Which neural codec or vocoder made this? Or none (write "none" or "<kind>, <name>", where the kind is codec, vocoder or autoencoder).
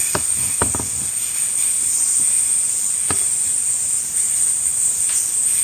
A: none